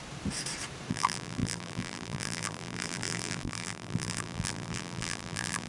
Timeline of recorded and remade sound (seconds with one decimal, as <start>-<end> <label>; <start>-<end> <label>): 0.0-0.9 recorded; 0.9-5.7 remade